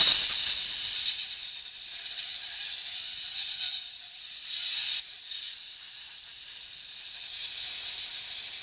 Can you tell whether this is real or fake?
real